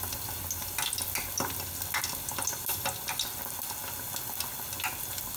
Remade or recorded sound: recorded